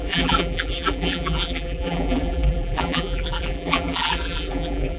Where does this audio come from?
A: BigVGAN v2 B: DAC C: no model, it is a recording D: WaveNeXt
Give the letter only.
A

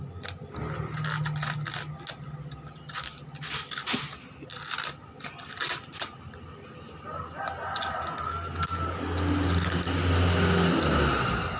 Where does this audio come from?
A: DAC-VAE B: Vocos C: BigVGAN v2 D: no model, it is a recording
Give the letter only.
D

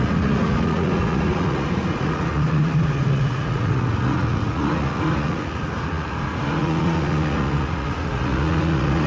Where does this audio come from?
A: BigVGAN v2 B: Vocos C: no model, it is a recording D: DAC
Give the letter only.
B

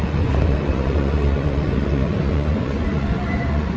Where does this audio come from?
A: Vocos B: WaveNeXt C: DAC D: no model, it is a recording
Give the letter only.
A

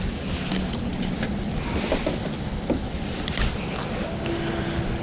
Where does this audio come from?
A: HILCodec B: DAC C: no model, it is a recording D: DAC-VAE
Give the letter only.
C